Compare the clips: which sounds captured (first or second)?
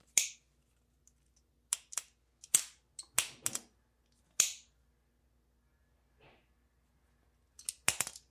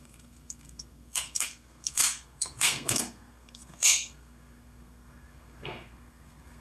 first